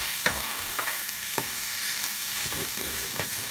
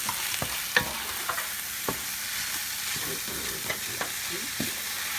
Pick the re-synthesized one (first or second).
first